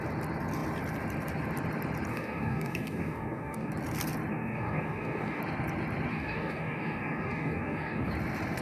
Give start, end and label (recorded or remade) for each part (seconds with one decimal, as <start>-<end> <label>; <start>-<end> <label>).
0.0-2.1 recorded; 2.1-3.7 remade; 3.7-4.3 recorded; 4.3-5.4 remade; 5.4-6.1 recorded; 6.1-8.1 remade; 8.1-8.6 recorded